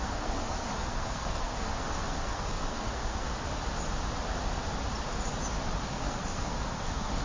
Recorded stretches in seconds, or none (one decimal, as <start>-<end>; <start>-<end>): 3.3-5.9